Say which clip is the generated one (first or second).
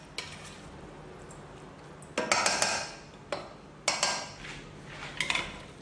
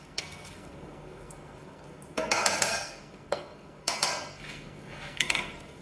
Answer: second